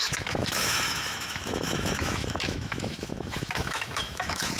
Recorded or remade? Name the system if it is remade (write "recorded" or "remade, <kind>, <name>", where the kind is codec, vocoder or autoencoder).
remade, autoencoder, DAC-VAE